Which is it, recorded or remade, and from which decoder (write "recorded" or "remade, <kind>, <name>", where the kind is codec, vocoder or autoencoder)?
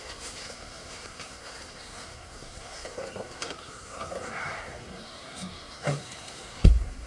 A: remade, codec, SNAC